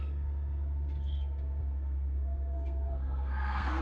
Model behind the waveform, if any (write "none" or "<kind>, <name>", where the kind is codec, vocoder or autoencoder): codec, SNAC